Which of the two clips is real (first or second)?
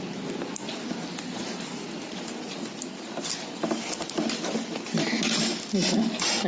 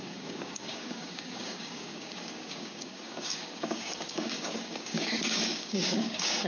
first